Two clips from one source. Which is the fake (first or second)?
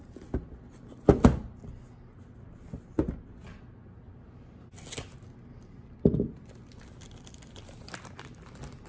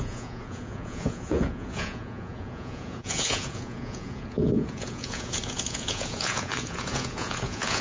second